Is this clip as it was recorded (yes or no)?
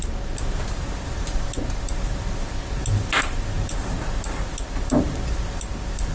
yes